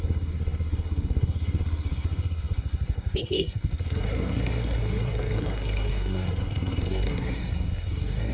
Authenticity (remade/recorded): remade